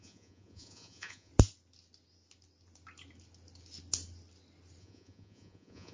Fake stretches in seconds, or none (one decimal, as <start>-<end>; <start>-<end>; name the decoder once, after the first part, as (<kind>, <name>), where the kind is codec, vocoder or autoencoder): 0.0-1.3 (vocoder, Vocos); 4.8-5.9

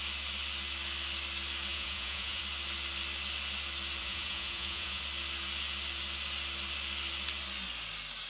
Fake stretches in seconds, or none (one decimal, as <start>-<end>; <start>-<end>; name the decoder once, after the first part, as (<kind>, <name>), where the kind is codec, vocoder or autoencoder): 1.7-2.4 (vocoder, Vocos); 4.0-5.0

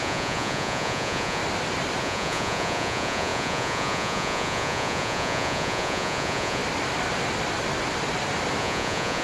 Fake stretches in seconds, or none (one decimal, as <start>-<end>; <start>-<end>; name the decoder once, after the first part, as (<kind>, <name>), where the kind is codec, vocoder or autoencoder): 0.0-1.4 (vocoder, Vocos); 2.0-6.6; 8.6-9.2

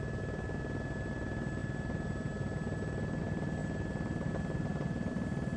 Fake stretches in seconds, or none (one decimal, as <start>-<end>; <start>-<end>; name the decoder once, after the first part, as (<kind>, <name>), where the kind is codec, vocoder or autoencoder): none